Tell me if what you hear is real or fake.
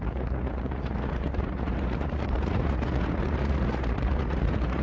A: fake